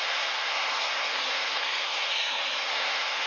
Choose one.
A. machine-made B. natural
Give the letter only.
A